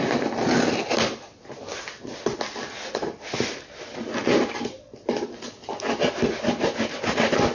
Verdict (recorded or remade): recorded